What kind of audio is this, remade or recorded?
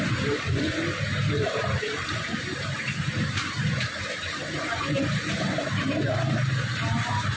remade